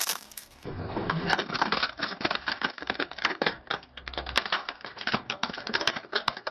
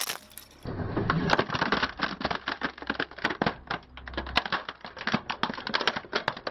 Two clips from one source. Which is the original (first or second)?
second